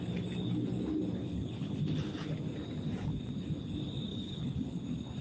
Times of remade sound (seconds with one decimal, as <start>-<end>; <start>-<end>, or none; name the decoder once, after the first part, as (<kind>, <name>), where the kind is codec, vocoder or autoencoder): 1.2-1.8 (codec, HILCodec); 4.1-4.8